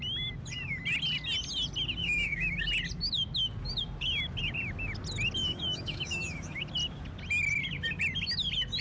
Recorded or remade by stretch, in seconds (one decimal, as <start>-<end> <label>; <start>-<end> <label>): 0.0-2.0 recorded; 2.0-2.6 remade; 2.6-5.4 recorded; 5.4-6.6 remade; 6.6-8.8 recorded

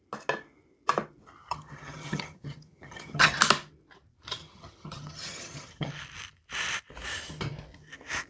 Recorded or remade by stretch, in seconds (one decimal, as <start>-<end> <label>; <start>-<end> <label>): 0.0-1.4 recorded; 1.4-3.4 remade; 3.4-4.4 recorded; 4.4-5.9 remade; 5.9-8.3 recorded